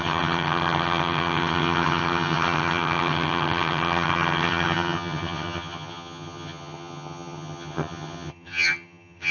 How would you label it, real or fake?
fake